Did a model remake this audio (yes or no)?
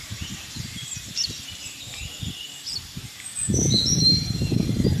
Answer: yes